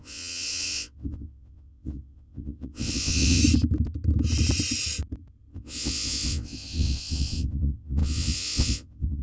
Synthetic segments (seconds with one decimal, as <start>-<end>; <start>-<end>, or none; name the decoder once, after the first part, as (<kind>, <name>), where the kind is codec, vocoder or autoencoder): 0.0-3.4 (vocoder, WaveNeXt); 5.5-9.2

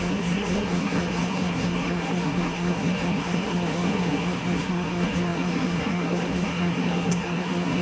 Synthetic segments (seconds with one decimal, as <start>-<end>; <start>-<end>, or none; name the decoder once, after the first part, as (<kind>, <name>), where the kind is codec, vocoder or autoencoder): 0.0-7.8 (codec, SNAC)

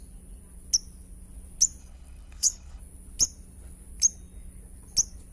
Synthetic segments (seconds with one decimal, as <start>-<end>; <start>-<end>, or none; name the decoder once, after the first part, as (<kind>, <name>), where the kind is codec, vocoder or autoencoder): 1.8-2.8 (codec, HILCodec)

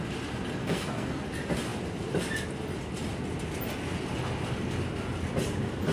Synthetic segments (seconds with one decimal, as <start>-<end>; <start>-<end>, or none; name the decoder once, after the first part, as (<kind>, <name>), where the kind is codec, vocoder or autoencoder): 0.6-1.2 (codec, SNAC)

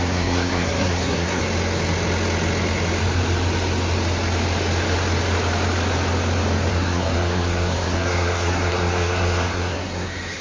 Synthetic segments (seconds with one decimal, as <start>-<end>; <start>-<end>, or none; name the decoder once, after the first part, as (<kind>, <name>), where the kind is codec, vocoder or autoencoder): 0.0-1.4 (codec, SNAC); 6.7-10.4